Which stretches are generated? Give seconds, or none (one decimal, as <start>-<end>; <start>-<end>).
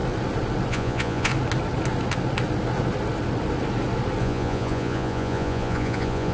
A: 0.7-1.3; 4.2-6.3